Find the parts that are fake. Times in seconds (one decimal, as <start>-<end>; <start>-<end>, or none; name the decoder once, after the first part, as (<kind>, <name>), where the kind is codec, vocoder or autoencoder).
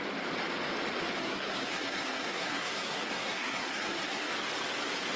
1.2-4.3 (codec, SNAC)